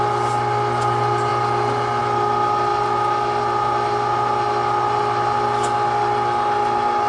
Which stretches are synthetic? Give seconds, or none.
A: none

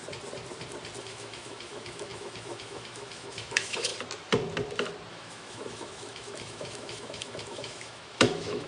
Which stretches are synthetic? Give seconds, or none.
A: 1.0-3.9 (autoencoder, DAC-VAE); 5.1-8.7

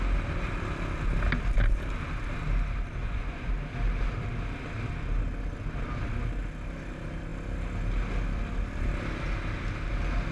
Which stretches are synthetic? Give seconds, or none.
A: 3.0-3.5 (vocoder, Vocos)